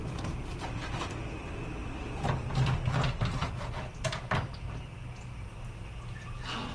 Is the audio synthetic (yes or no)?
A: no